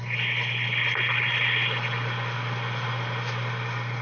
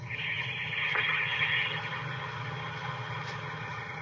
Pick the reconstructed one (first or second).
second